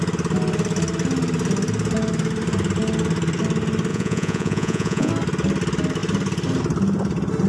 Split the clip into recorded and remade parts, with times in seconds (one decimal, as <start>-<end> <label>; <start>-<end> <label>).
0.0-3.9 recorded; 3.9-5.1 remade; 5.1-7.5 recorded